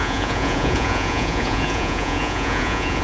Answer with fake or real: fake